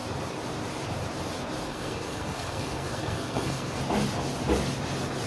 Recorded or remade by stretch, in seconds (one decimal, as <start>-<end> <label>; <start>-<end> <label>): 0.0-1.7 recorded; 1.7-3.8 remade; 3.8-5.3 recorded